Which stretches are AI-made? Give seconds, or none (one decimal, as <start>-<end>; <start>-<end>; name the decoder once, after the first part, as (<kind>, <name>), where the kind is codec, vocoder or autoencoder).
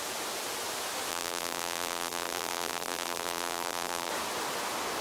1.1-4.1 (vocoder, BigVGAN v2)